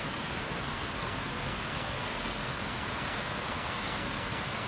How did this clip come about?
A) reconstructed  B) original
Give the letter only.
A